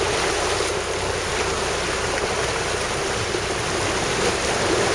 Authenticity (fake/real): real